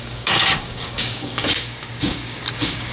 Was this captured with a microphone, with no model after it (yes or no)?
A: no